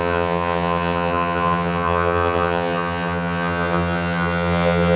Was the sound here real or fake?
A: fake